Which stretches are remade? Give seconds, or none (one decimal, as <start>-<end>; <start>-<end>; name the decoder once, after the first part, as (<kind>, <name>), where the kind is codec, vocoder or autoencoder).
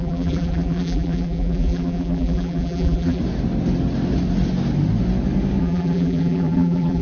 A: 0.0-3.2 (vocoder, BigVGAN v2); 5.6-7.0